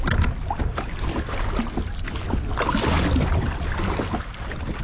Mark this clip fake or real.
real